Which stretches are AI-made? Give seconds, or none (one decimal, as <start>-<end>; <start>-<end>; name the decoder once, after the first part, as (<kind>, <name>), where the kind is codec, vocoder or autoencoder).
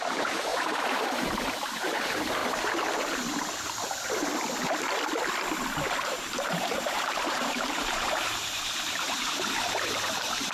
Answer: 0.0-2.4 (vocoder, BigVGAN v2); 6.0-10.5